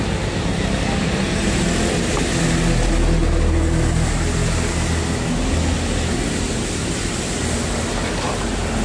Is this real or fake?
real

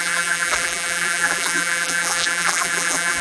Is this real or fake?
fake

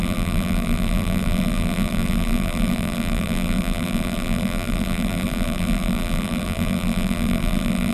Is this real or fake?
fake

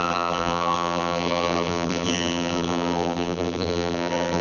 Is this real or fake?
fake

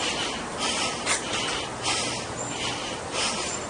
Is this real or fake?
real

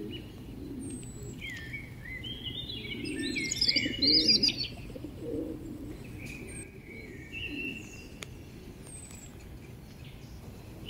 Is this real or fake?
real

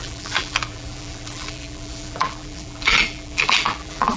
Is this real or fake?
fake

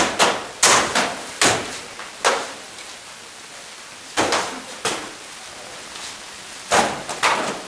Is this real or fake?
real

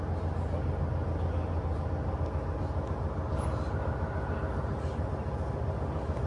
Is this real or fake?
real